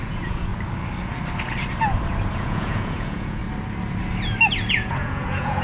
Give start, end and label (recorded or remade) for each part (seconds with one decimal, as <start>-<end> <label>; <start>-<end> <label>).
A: 0.0-0.5 remade; 0.5-2.3 recorded; 2.3-3.4 remade; 3.4-4.7 recorded; 4.7-5.6 remade